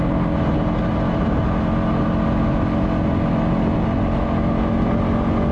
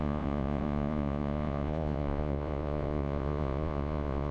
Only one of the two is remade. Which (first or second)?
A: second